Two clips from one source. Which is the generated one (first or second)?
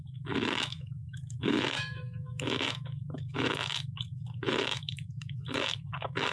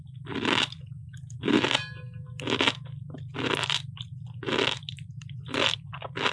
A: first